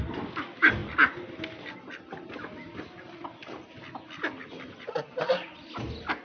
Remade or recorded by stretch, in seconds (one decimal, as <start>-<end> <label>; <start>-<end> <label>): 0.0-6.2 recorded